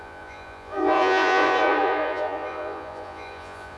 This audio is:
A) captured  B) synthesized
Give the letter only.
B